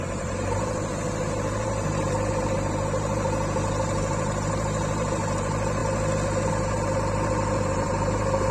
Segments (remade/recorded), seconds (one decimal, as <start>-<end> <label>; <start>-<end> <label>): 0.0-5.8 remade; 5.8-6.5 recorded; 6.5-8.5 remade